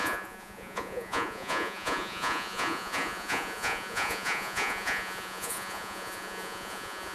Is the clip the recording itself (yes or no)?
no